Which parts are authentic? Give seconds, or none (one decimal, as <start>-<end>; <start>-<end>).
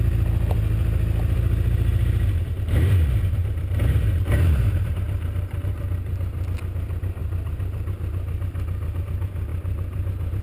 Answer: 0.0-1.9; 2.9-3.4; 5.7-7.2; 9.0-9.5